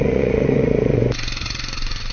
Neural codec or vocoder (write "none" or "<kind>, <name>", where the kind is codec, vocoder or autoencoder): vocoder, Vocos